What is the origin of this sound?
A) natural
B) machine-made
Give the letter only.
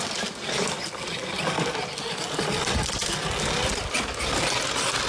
A